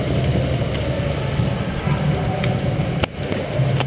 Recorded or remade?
recorded